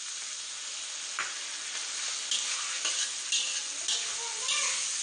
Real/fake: real